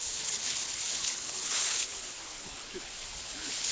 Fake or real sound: fake